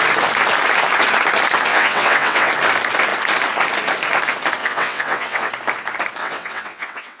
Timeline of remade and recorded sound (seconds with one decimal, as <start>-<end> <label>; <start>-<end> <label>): 0.0-1.7 recorded; 1.7-2.5 remade; 2.5-4.6 recorded; 4.6-5.5 remade; 5.5-6.2 recorded; 6.2-7.2 remade